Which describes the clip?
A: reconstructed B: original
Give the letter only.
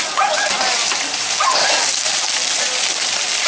B